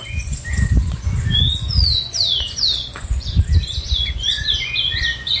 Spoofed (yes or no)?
yes